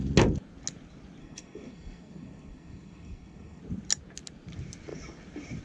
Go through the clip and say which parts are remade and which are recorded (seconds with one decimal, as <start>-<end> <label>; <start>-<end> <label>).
0.0-1.2 recorded; 1.2-3.6 remade; 3.6-5.6 recorded